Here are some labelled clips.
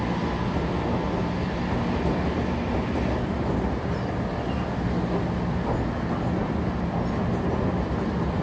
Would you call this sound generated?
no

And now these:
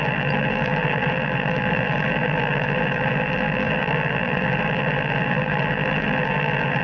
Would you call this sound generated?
yes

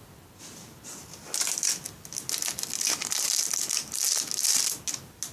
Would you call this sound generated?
no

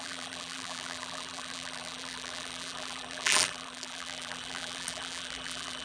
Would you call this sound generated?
yes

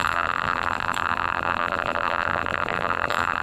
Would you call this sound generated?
yes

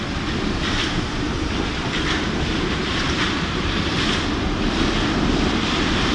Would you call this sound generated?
yes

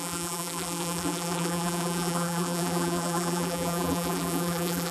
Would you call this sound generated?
yes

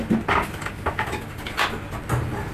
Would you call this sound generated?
no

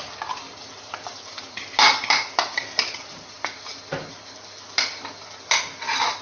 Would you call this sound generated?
no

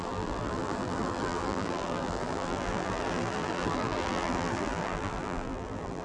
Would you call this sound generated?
yes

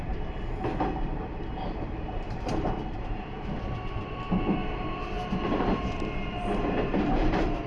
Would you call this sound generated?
yes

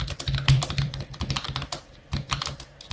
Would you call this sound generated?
yes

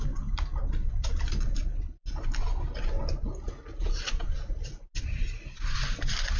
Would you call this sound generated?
no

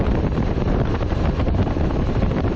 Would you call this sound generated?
yes